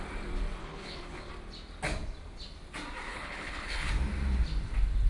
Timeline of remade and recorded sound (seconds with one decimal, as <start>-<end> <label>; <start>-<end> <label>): 0.0-0.6 recorded; 0.6-1.3 remade; 1.3-3.1 recorded; 3.1-3.9 remade; 3.9-5.1 recorded